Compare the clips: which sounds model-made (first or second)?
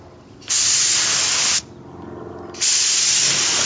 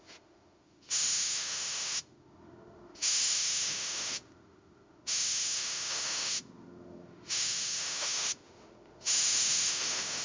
second